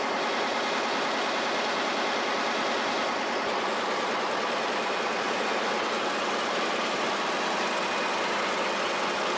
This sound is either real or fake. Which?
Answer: real